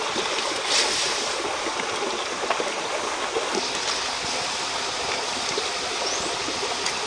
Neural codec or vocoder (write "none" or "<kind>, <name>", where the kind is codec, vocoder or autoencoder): none